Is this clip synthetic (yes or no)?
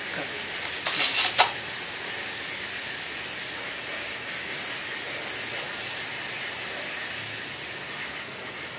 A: no